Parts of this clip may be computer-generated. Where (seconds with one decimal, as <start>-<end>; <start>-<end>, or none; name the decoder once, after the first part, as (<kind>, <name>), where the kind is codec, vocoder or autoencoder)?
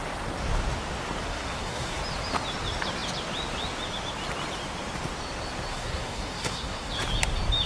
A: 1.3-2.0 (codec, SNAC); 5.7-6.9